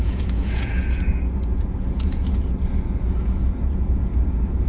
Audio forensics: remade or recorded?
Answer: remade